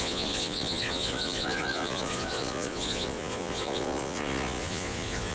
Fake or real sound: fake